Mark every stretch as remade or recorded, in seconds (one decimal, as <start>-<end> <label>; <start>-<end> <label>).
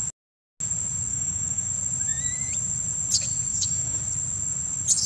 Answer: 0.0-1.1 recorded; 1.1-1.7 remade; 1.7-3.5 recorded; 3.5-4.0 remade; 4.0-5.1 recorded